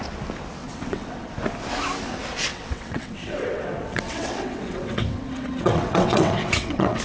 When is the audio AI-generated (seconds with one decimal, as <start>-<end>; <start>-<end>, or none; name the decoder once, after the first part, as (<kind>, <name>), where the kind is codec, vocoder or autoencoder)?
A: 0.6-1.3 (vocoder, WaveNeXt); 2.5-7.0